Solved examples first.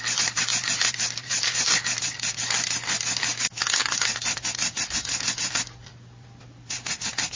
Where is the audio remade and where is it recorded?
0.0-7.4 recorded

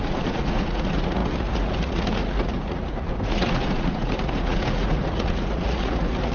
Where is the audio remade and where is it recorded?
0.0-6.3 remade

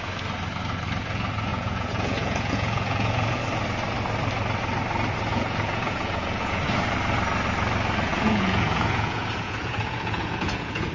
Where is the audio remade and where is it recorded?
0.0-1.5 recorded; 1.5-3.4 remade; 3.4-5.3 recorded; 5.3-6.6 remade; 6.6-8.1 recorded; 8.1-10.9 remade

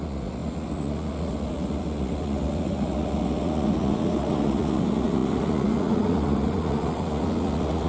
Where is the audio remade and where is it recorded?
0.0-7.9 remade